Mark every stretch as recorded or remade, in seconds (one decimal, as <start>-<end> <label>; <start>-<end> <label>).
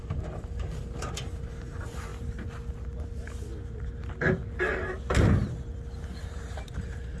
0.0-2.1 remade; 2.1-6.3 recorded; 6.3-7.2 remade